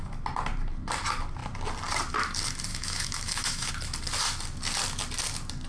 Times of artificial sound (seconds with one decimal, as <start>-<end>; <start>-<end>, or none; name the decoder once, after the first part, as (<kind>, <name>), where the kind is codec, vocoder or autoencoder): 2.7-3.7 (autoencoder, DAC-VAE)